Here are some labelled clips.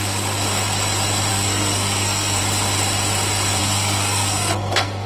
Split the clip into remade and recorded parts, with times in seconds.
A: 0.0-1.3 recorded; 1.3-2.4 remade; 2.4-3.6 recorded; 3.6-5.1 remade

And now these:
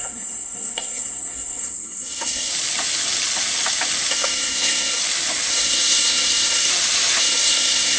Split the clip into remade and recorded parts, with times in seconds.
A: 0.0-2.5 remade; 2.5-4.1 recorded; 4.1-5.0 remade; 5.0-5.5 recorded; 5.5-6.7 remade; 6.7-7.2 recorded; 7.2-8.0 remade

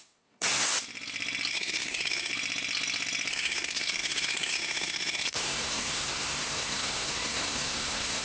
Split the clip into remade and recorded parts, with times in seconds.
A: 0.0-0.7 remade; 0.7-1.5 recorded; 1.5-2.3 remade; 2.3-3.3 recorded; 3.3-8.2 remade

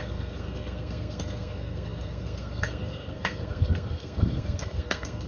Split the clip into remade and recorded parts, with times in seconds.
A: 0.0-5.3 remade

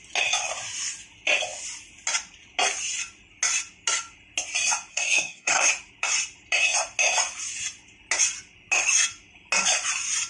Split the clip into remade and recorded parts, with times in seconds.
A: 0.0-4.9 recorded; 4.9-5.7 remade; 5.7-10.3 recorded

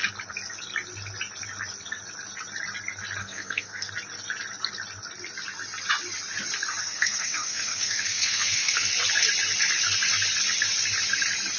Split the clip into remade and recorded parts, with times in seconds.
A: 0.0-3.2 recorded; 3.2-3.9 remade; 3.9-6.8 recorded; 6.8-8.9 remade; 8.9-11.6 recorded